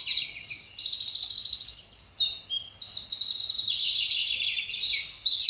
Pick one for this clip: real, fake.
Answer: real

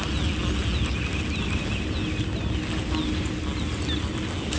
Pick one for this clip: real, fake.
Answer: real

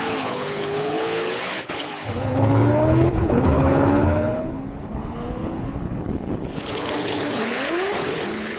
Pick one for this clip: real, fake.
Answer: fake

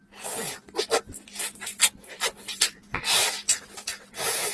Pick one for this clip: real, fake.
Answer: real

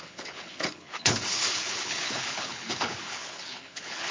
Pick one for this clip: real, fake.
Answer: fake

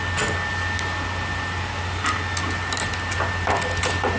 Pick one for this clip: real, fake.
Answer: real